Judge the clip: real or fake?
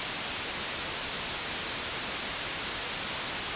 real